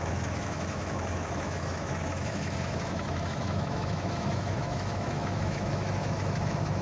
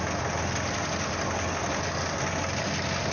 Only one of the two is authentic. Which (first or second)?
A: second